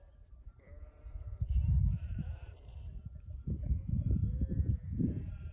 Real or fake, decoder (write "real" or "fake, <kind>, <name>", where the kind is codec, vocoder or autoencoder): fake, vocoder, BigVGAN v2